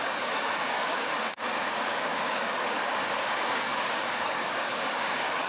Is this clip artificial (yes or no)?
yes